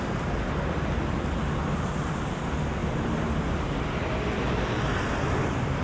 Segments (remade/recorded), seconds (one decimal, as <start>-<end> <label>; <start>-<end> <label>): 0.0-5.8 recorded